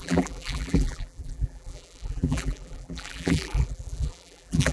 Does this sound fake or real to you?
fake